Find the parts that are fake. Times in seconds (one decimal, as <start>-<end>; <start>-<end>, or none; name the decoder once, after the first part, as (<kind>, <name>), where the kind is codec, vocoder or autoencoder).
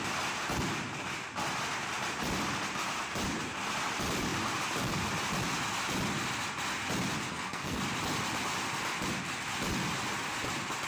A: 7.3-7.8 (codec, SNAC)